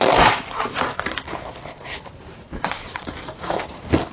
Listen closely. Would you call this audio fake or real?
fake